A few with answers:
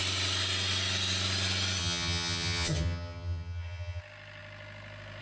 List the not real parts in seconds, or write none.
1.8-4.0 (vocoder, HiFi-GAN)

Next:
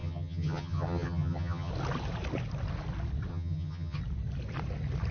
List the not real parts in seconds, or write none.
0.0-1.7 (vocoder, HiFi-GAN); 3.3-4.0

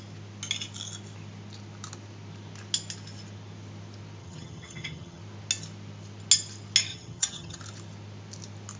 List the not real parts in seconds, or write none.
4.2-5.2 (vocoder, HiFi-GAN); 6.9-7.6

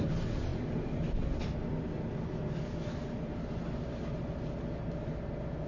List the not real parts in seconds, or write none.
none

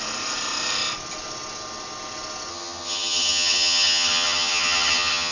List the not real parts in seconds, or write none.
2.5-5.3 (vocoder, HiFi-GAN)

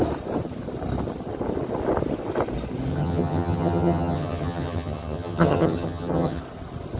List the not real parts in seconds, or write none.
2.9-6.4 (vocoder, HiFi-GAN)